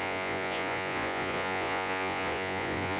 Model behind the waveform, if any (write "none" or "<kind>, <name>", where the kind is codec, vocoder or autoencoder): vocoder, Vocos